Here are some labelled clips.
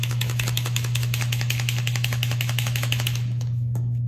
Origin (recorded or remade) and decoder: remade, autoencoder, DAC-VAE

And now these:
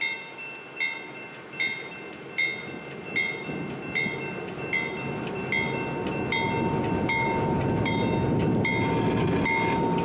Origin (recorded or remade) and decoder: recorded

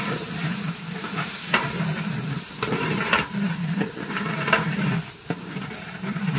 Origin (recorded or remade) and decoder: remade, vocoder, BigVGAN v2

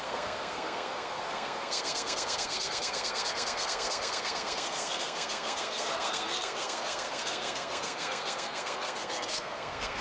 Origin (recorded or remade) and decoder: remade, codec, SNAC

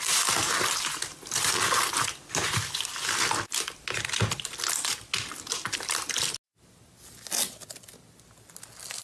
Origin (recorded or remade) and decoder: recorded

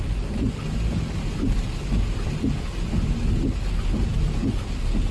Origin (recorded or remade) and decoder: recorded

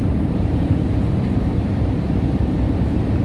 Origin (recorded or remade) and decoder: remade, vocoder, BigVGAN v2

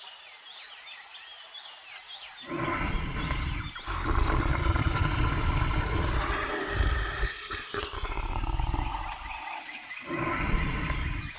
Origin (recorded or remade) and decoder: recorded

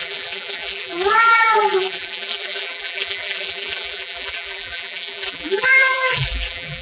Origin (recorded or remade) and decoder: remade, vocoder, BigVGAN v2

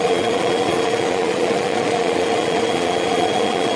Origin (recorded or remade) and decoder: remade, vocoder, Vocos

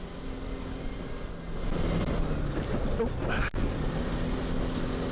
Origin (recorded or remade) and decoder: recorded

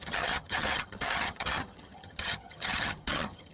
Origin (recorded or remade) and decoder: remade, vocoder, HiFi-GAN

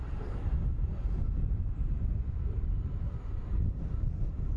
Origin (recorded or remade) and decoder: recorded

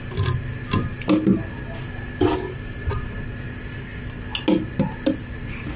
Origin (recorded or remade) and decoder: recorded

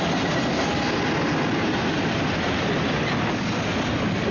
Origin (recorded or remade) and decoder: recorded